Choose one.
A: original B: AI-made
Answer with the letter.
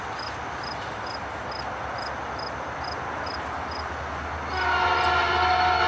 A